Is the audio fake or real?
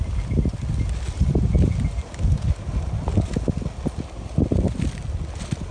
real